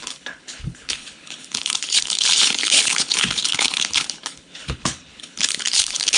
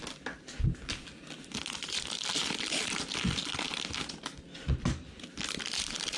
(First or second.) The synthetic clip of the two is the first